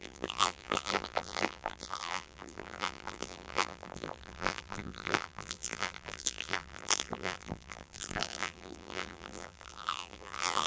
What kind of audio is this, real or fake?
fake